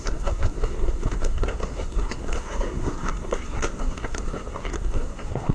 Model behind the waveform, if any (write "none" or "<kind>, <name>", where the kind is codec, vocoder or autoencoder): codec, SNAC